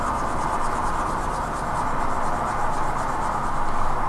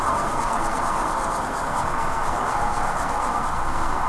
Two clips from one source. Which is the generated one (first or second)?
second